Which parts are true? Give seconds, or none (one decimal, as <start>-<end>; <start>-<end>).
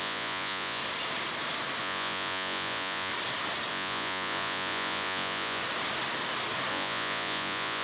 0.8-1.8; 3.1-3.7; 5.6-6.7